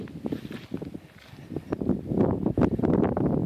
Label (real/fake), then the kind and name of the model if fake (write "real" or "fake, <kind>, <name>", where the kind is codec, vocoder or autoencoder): real